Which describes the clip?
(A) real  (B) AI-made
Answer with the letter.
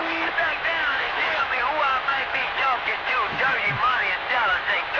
B